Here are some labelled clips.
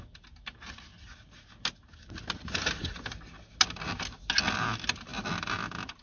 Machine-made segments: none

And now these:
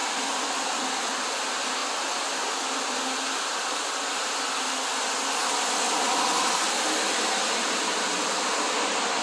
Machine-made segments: 0.0-0.8 (vocoder, BigVGAN v2)

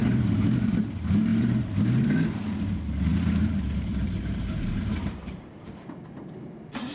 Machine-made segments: 0.0-0.7 (vocoder, BigVGAN v2); 1.3-2.1; 3.1-5.7